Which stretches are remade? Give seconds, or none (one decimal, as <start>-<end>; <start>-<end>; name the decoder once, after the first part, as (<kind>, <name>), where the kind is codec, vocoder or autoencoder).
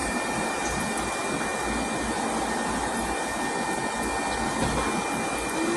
0.0-0.8 (vocoder, BigVGAN v2)